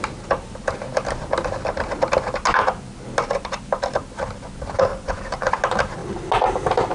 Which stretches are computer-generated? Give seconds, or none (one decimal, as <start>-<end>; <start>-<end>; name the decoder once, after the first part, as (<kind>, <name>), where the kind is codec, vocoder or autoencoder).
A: 4.9-5.5 (vocoder, Vocos)